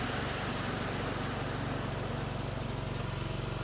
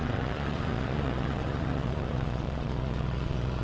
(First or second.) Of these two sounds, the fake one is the second